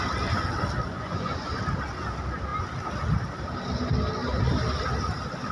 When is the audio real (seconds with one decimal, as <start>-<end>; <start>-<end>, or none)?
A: 0.0-0.8; 1.6-5.5